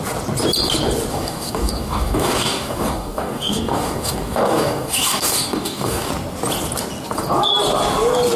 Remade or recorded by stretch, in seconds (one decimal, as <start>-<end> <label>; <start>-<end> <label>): 0.0-1.1 recorded; 1.1-6.1 remade; 6.1-8.4 recorded